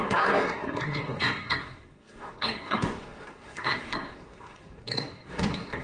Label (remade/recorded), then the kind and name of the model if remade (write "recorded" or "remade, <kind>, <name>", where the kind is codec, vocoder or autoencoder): remade, codec, SNAC